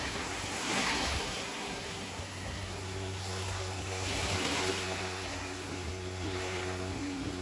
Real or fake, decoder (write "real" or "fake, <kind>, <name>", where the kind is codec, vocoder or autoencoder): fake, codec, SNAC